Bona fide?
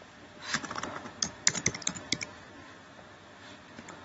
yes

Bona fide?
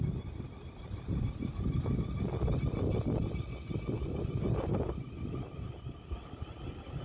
yes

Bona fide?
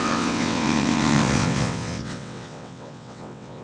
no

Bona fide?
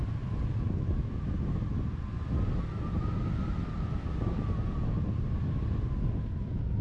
yes